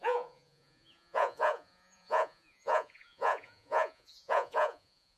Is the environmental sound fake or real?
fake